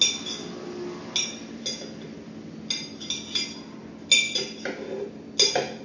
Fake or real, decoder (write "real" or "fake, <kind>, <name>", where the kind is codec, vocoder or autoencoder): real